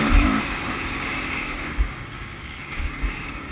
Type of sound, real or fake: fake